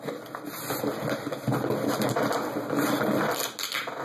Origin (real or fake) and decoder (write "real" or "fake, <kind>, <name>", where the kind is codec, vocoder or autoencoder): real